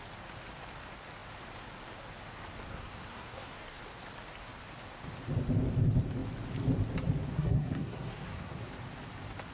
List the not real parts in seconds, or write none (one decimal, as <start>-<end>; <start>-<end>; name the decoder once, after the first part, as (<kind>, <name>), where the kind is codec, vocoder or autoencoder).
2.7-3.8 (codec, SNAC); 7.3-8.7